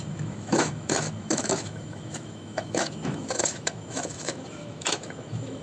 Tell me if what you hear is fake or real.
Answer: fake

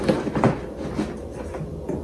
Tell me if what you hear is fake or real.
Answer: real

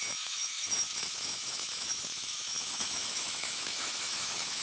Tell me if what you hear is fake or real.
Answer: fake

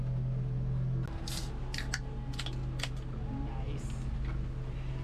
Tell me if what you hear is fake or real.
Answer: real